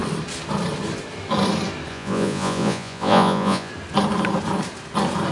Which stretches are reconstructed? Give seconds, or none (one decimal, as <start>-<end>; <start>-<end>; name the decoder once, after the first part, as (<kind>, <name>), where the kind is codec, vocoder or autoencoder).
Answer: 1.9-3.7 (vocoder, Vocos)